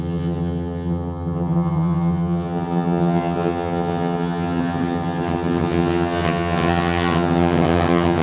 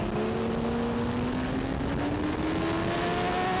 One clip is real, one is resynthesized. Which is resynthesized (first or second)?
first